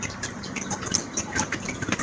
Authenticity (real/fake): real